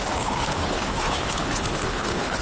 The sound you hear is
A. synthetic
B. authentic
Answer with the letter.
A